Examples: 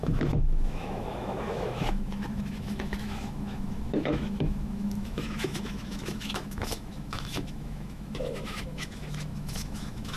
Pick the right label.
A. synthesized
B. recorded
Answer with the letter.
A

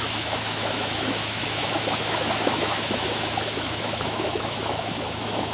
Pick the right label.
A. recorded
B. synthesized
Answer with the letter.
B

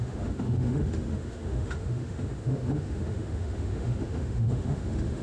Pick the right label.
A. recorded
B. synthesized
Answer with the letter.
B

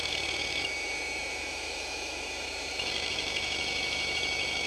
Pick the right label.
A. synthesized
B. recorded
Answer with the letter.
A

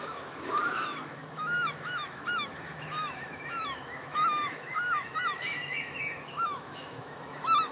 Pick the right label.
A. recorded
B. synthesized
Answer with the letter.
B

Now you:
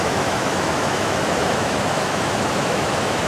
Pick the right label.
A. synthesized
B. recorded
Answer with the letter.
A